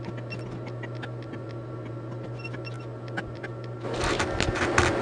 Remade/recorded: recorded